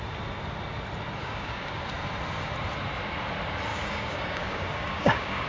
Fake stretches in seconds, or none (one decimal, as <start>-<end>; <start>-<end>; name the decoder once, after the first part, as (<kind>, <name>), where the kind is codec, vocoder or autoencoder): 1.2-1.9 (codec, DAC); 3.7-5.5